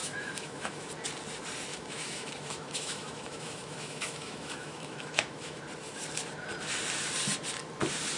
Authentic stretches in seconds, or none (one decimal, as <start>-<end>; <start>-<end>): 0.9-1.7; 5.6-8.2